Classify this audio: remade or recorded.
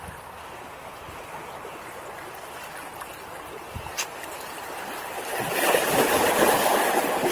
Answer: recorded